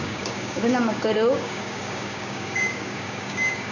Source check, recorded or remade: remade